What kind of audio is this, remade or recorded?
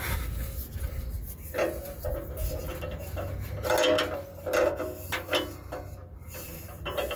recorded